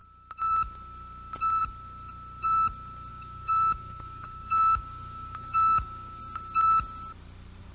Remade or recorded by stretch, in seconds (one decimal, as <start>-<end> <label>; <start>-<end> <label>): 0.0-3.1 recorded; 3.1-6.2 remade; 6.2-7.7 recorded